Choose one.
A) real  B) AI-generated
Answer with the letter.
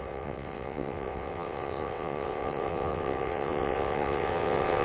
B